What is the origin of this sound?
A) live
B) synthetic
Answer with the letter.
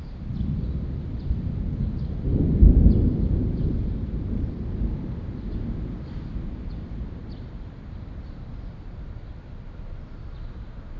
B